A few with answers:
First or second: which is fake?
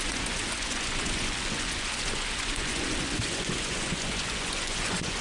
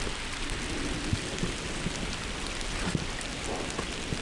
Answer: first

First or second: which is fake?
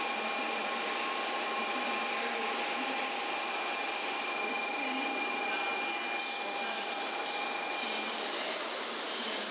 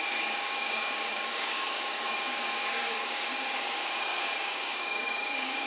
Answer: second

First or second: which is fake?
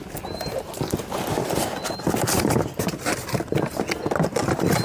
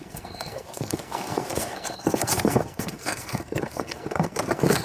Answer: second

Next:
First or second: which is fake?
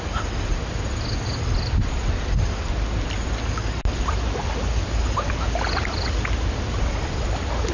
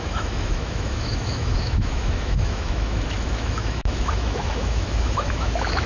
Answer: second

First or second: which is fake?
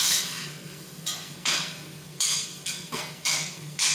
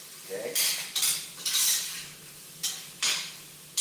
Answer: first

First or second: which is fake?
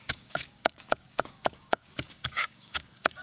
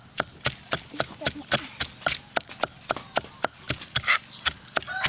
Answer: first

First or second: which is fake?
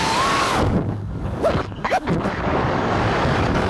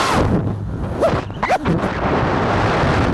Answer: first